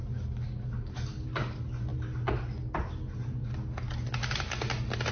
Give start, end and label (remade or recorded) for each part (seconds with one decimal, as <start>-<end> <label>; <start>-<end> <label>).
0.0-5.1 recorded